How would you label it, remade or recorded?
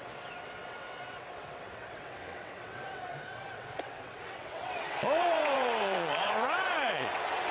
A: remade